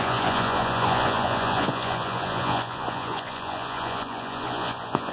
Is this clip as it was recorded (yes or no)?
no